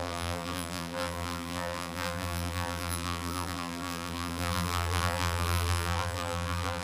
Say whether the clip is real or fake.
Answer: fake